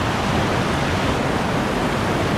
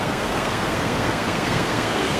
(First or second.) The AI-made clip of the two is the second